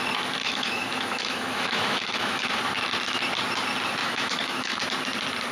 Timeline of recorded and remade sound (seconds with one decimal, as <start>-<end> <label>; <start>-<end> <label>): 0.0-0.4 recorded; 0.4-2.6 remade; 2.6-4.0 recorded; 4.0-4.8 remade; 4.8-5.5 recorded